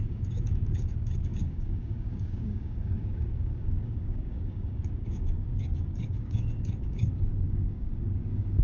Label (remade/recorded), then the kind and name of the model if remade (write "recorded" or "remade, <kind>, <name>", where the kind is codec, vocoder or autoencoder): remade, codec, DAC